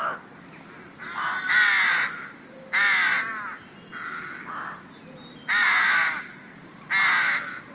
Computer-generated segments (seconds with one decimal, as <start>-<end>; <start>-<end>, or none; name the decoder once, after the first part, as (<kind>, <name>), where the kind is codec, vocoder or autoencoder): none